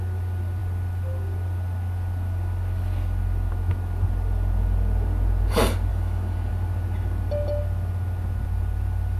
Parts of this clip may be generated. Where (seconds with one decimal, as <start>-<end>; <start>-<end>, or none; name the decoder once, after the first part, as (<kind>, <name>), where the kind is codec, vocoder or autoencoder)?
5.9-6.5 (codec, DAC)